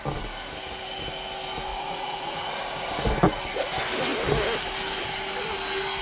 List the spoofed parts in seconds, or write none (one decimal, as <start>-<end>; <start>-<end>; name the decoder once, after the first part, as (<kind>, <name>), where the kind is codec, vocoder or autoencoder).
1.7-2.5 (vocoder, Vocos)